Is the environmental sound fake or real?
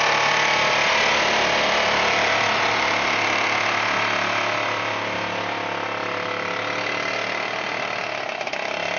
real